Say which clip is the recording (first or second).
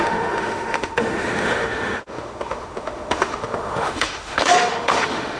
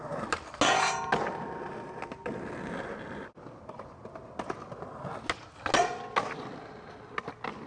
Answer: second